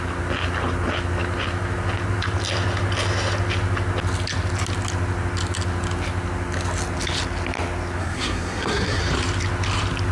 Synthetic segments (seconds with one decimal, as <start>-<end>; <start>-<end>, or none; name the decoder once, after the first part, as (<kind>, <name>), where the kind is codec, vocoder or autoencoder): 8.0-9.0 (codec, SNAC)